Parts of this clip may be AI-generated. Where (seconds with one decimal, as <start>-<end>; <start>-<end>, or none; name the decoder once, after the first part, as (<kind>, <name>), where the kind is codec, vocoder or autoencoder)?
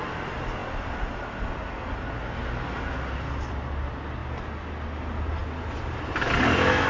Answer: none